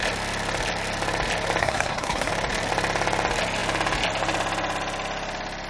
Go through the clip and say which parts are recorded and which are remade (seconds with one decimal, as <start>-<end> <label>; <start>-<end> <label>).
0.0-1.6 recorded; 1.6-2.3 remade; 2.3-5.7 recorded